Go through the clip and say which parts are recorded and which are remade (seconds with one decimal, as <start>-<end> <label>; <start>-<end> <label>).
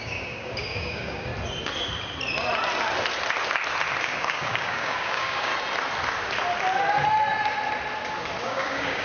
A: 0.0-1.3 remade; 1.3-4.0 recorded; 4.0-5.5 remade; 5.5-8.4 recorded; 8.4-9.0 remade